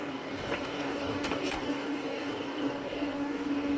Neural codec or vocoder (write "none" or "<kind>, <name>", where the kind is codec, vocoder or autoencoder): codec, DAC